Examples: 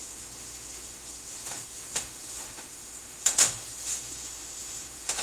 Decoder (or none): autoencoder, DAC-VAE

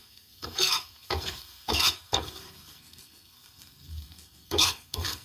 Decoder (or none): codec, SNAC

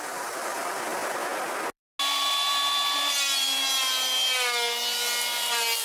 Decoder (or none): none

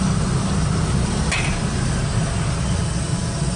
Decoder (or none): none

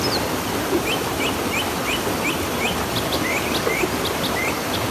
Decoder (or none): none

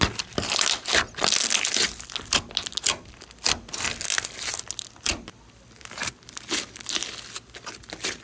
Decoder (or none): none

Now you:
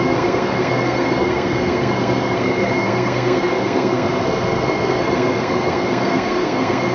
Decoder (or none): codec, SNAC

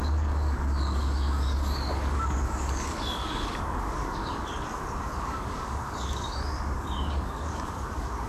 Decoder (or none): codec, DAC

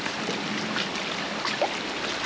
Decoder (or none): none